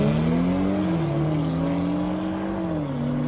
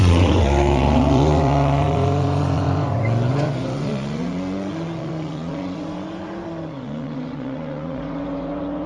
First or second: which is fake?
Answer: second